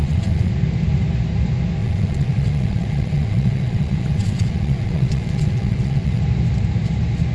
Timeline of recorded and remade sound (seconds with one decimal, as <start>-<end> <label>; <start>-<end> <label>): 0.0-0.5 remade; 0.5-1.8 recorded; 1.8-6.2 remade; 6.2-7.3 recorded

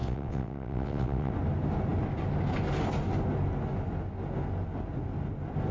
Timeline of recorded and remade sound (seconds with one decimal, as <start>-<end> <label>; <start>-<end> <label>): 0.0-1.3 remade; 1.3-5.7 recorded